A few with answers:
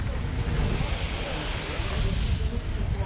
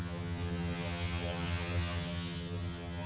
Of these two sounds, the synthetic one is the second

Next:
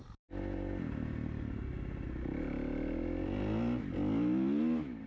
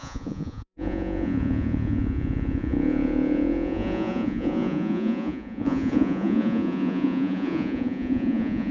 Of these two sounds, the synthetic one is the second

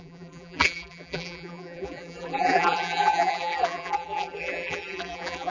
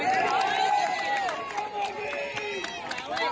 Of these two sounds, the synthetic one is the first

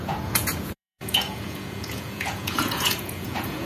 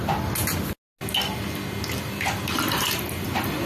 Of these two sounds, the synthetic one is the first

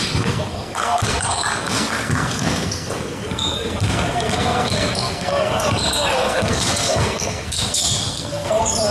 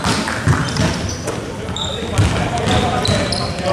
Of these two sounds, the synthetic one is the first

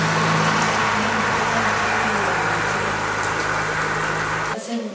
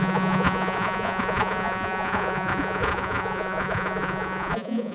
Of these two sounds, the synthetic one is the second